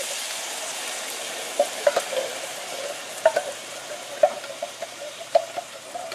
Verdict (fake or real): fake